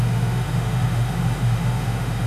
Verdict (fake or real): fake